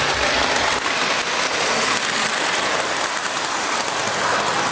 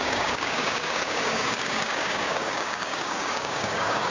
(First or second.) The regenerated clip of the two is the second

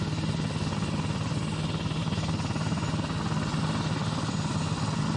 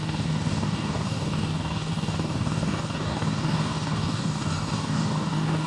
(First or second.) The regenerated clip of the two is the second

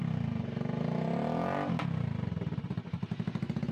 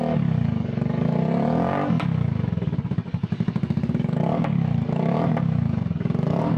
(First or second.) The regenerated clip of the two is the second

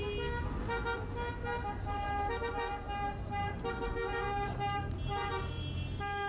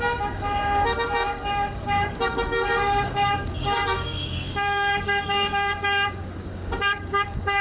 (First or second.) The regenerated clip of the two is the second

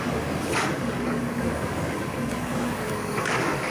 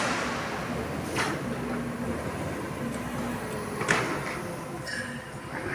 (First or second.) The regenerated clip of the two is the first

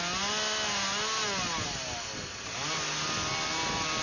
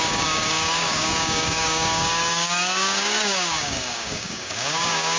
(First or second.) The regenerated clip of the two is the second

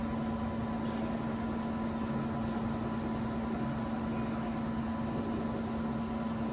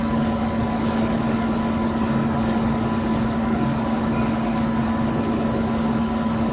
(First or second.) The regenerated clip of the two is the second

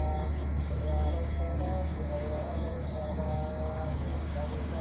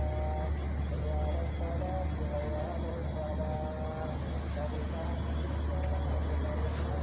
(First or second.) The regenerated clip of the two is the first